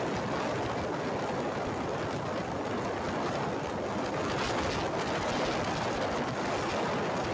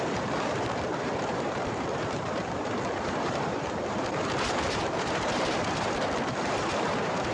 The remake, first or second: second